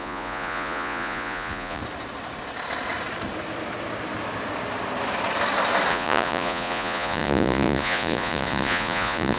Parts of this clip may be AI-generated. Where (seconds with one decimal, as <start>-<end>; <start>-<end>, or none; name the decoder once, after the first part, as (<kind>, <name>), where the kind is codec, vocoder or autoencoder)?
0.0-1.8 (vocoder, Vocos); 5.9-9.4